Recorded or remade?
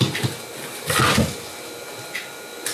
recorded